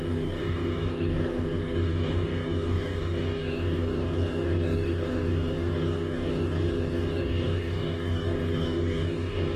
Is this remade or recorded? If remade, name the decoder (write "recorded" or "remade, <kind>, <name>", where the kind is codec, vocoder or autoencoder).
remade, codec, DAC